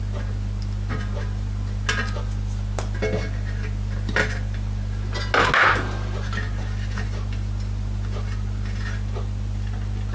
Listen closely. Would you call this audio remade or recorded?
recorded